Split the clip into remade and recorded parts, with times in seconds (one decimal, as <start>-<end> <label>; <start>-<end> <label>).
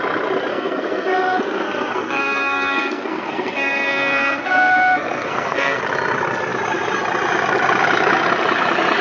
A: 0.0-0.5 recorded; 0.5-5.8 remade; 5.8-9.0 recorded